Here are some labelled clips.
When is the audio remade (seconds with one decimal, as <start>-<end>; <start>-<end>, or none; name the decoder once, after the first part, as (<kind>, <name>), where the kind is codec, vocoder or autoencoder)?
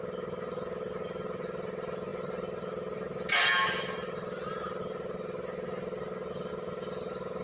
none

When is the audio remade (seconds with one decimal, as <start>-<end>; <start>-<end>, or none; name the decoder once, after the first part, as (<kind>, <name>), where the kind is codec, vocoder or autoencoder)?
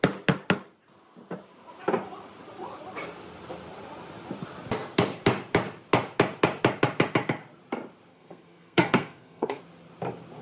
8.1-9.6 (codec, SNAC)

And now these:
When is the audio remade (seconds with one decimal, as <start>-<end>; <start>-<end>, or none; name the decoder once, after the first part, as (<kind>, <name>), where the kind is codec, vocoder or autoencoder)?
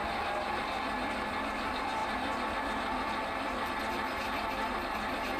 none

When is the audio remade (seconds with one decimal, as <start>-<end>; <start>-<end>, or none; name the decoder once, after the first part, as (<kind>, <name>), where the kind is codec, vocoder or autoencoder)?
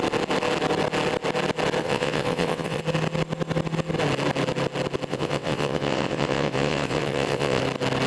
1.8-2.8 (vocoder, WaveNeXt); 5.1-7.6